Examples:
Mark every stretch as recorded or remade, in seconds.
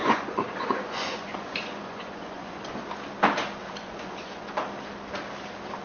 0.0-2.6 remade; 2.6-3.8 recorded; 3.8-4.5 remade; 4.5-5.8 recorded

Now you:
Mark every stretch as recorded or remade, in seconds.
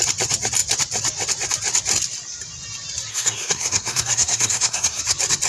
0.0-3.1 recorded; 3.1-5.0 remade; 5.0-5.5 recorded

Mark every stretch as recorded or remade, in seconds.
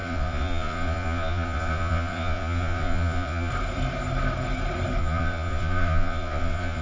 0.0-3.5 remade; 3.5-5.0 recorded; 5.0-6.8 remade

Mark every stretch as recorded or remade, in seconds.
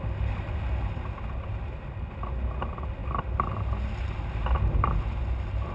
0.0-5.7 recorded